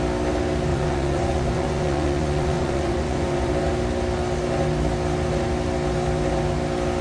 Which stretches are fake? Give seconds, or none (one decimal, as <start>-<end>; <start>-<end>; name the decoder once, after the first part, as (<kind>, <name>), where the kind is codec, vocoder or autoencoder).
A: 0.7-3.5 (vocoder, Vocos)